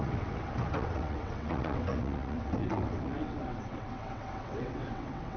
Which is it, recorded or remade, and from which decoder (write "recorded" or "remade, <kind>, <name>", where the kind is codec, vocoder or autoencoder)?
remade, vocoder, WaveNeXt